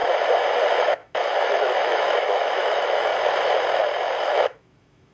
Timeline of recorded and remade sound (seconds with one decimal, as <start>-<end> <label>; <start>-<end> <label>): 0.0-0.6 recorded; 0.6-3.1 remade; 3.1-4.2 recorded; 4.2-5.1 remade